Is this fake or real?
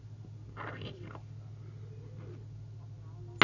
real